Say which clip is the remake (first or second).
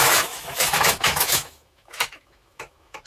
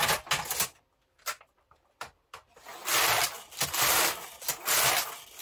first